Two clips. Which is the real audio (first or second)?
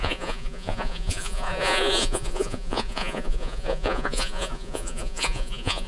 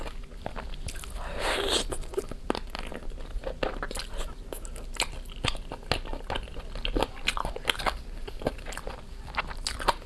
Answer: second